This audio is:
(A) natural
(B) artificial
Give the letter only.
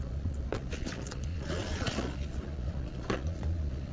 B